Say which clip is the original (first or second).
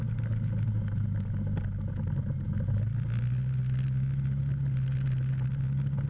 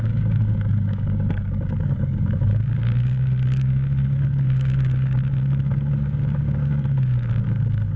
first